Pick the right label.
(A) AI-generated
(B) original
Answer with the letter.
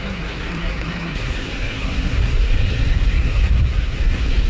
A